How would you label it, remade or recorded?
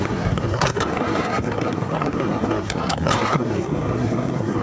remade